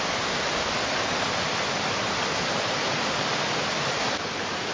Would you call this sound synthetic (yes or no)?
yes